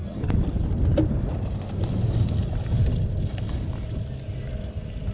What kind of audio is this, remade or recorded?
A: recorded